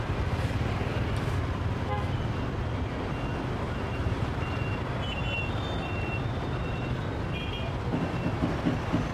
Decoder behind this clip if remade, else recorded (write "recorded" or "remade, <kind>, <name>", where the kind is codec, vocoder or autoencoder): recorded